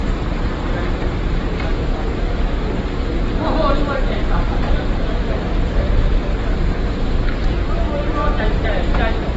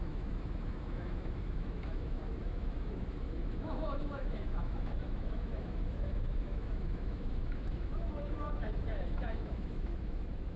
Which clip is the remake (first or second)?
second